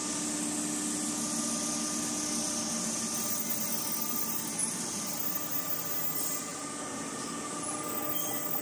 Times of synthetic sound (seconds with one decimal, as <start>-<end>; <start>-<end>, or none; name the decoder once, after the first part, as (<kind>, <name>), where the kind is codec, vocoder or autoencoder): 3.5-5.4 (vocoder, BigVGAN v2); 6.5-7.4